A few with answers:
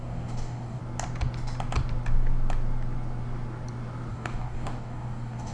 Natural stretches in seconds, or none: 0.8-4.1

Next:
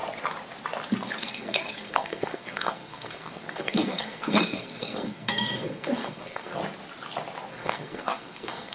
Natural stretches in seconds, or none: 0.0-1.2; 6.6-7.5

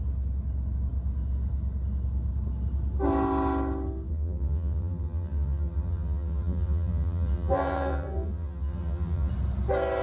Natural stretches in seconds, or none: 0.0-4.1; 9.3-10.0